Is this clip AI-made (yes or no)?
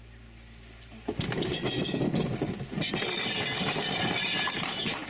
no